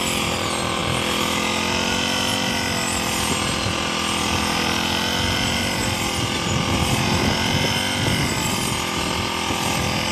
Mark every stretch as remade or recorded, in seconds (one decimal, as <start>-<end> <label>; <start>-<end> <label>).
0.0-10.1 recorded